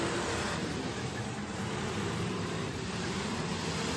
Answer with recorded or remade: remade